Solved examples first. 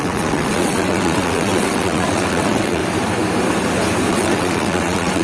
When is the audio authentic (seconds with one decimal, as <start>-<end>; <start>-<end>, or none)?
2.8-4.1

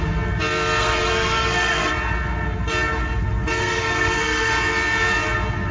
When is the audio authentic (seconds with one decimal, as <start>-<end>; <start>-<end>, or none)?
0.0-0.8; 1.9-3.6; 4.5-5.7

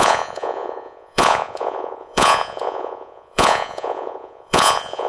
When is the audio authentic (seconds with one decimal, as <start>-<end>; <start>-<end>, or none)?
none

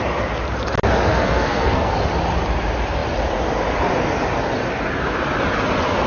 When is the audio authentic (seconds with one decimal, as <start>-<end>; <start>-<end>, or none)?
0.0-1.1; 1.9-6.1